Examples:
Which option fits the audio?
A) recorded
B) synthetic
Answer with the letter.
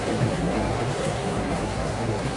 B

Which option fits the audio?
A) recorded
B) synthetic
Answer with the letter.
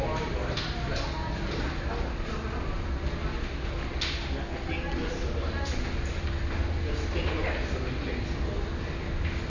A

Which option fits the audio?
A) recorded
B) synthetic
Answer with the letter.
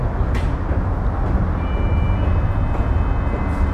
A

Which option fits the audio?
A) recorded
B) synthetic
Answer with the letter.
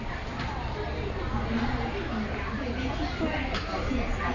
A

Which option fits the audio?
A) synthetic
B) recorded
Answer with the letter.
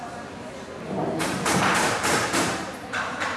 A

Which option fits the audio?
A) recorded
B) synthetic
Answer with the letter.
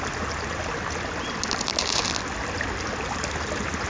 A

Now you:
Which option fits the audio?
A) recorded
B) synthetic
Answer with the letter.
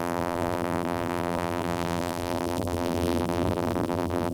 B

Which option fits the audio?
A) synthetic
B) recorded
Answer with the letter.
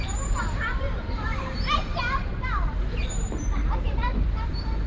A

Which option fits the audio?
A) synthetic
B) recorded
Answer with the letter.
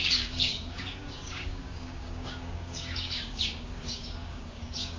A